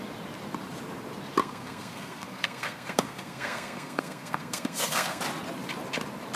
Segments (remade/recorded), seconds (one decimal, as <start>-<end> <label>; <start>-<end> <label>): 0.0-1.4 recorded; 1.4-5.2 remade; 5.2-6.4 recorded